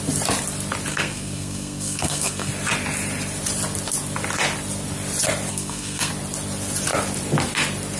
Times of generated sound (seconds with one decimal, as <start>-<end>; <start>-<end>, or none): 0.9-2.5; 5.5-6.1